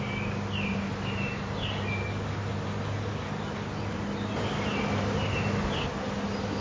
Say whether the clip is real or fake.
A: real